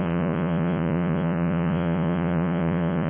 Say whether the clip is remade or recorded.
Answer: remade